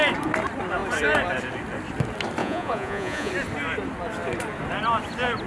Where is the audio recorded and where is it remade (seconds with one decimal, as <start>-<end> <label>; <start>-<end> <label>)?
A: 0.0-2.4 recorded; 2.4-3.3 remade; 3.3-5.5 recorded